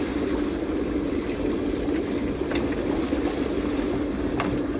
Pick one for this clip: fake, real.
real